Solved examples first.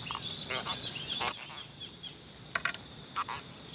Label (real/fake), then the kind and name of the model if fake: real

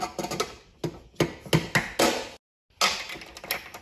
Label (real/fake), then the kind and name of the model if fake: real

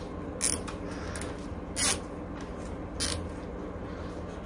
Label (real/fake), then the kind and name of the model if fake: real